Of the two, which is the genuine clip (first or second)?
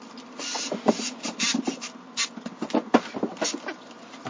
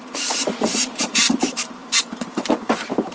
first